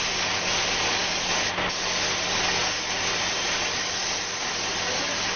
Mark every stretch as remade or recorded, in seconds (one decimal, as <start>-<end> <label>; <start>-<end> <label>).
0.0-5.4 recorded